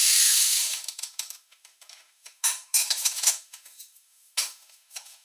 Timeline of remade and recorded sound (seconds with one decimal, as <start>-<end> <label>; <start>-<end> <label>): 0.0-5.2 remade